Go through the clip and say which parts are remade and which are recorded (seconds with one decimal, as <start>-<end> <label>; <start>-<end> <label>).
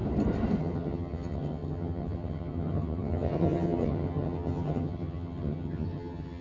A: 0.0-0.6 recorded; 0.6-6.4 remade